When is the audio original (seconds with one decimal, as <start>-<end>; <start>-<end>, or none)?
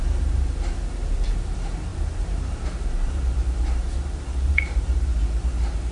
none